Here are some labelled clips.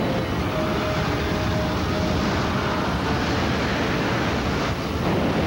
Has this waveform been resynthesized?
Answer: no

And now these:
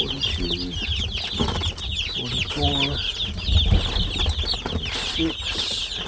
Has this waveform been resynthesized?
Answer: no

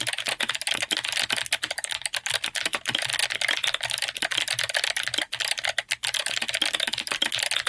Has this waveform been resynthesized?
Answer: no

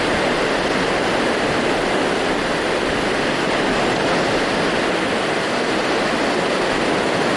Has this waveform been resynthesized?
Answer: no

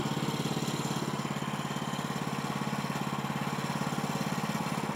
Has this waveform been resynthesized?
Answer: no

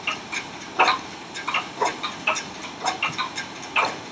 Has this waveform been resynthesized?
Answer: yes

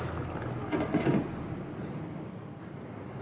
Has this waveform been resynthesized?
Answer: no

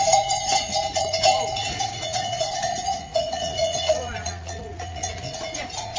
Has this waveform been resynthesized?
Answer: yes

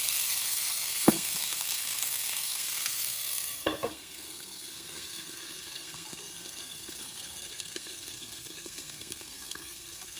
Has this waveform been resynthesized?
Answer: yes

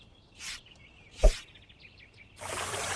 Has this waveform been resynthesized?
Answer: no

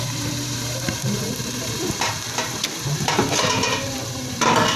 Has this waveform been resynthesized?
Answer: yes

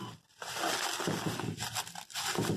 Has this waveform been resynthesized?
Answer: no